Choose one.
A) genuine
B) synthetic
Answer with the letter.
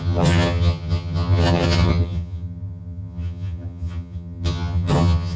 B